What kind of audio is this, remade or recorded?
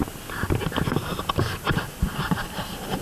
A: recorded